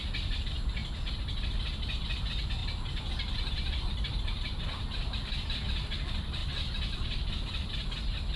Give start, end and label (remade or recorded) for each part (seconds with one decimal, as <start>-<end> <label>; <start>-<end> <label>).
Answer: 0.0-8.4 recorded